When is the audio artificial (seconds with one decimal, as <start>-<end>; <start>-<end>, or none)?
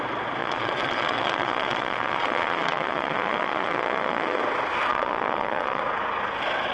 0.4-4.4; 4.9-5.8